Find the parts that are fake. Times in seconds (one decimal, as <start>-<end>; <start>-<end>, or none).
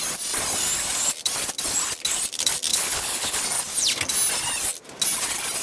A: 2.7-3.4